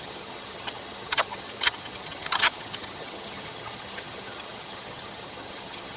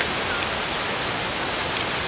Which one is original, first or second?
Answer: second